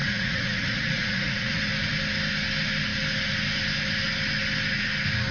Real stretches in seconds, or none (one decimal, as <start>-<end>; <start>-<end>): 1.6-5.3